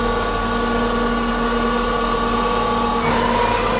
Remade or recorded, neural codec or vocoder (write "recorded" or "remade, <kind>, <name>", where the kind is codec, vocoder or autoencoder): recorded